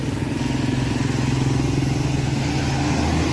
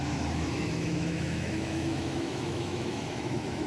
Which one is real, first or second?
first